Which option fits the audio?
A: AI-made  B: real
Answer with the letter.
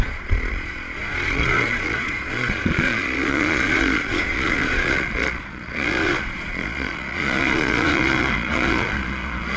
A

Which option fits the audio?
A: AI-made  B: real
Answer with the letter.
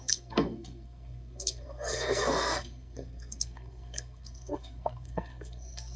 A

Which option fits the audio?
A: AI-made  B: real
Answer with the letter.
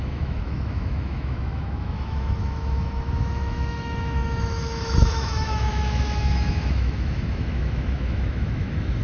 A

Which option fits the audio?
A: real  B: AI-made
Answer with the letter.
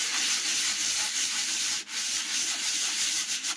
B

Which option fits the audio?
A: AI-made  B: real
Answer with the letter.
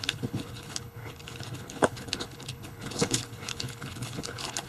A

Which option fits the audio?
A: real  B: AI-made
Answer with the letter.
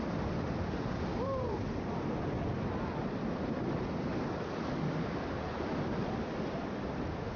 A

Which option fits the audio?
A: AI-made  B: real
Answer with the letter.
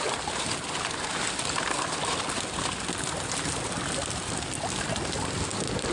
B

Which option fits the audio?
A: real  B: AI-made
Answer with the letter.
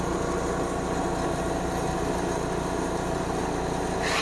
A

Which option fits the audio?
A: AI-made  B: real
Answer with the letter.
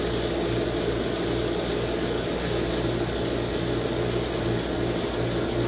B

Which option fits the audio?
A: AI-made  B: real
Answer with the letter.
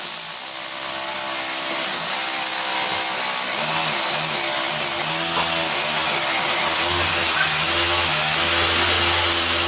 B